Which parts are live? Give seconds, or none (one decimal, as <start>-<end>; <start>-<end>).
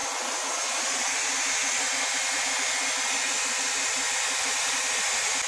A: 0.0-5.5